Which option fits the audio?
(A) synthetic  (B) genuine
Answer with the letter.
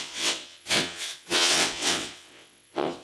A